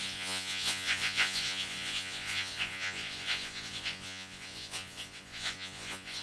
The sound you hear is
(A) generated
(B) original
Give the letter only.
A